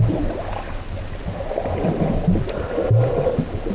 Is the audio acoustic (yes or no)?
yes